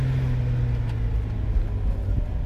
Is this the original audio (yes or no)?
yes